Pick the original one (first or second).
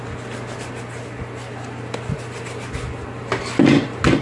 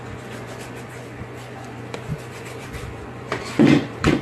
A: first